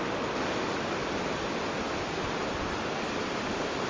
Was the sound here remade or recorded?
recorded